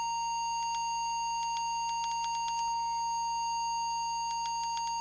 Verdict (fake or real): real